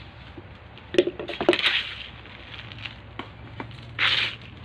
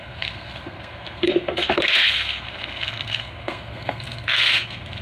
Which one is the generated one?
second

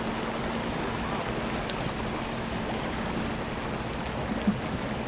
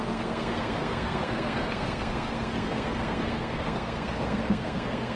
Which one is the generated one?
second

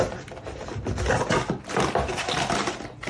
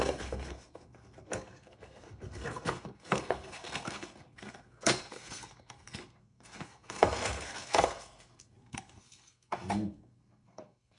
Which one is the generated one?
second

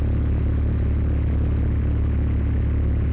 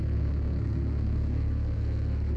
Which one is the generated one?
second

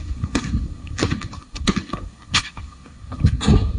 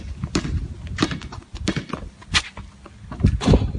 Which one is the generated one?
first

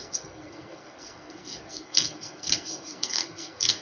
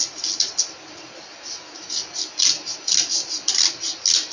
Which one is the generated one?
first